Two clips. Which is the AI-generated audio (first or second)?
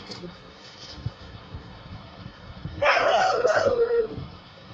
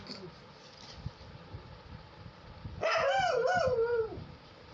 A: first